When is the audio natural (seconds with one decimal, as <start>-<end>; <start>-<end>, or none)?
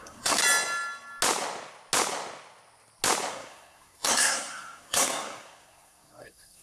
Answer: 0.4-3.3